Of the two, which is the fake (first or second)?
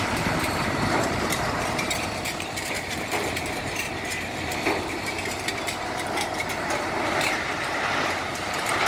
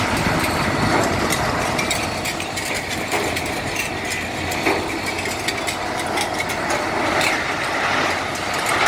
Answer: first